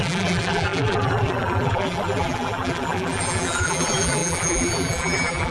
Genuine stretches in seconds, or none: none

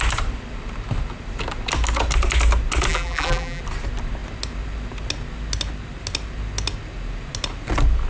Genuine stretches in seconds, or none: 0.0-2.9; 3.6-8.1

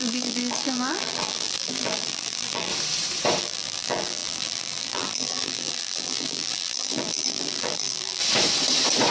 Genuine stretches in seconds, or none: 2.7-3.4; 8.2-9.1

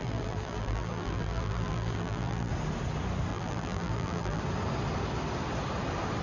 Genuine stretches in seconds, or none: 2.5-3.3; 4.4-6.2

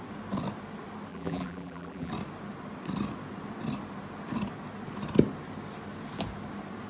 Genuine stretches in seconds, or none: 0.0-1.1; 2.1-6.9